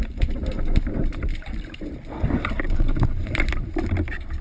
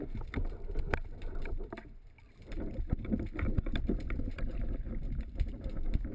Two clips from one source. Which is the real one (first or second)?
first